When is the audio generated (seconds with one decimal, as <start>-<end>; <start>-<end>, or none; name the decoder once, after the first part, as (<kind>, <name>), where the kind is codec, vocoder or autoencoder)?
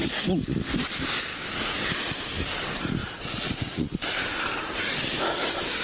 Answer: 3.0-4.0 (vocoder, Vocos)